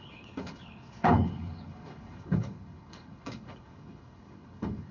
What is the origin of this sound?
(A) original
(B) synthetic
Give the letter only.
B